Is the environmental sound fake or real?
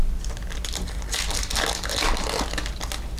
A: real